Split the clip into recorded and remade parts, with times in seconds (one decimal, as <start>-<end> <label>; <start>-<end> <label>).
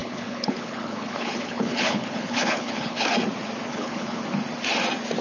0.0-3.1 remade; 3.1-3.7 recorded; 3.7-4.2 remade; 4.2-5.2 recorded